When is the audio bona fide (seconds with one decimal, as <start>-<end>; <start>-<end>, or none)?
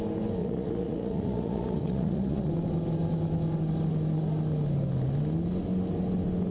0.0-0.4; 2.5-6.5